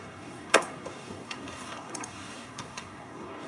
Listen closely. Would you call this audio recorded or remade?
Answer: remade